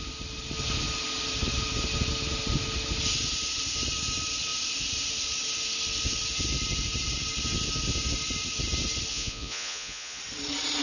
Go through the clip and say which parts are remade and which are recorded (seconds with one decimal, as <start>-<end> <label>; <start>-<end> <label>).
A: 0.0-9.1 recorded; 9.1-10.2 remade; 10.2-10.8 recorded